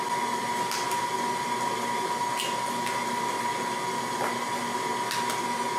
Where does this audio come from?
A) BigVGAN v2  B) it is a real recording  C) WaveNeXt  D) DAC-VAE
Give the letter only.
B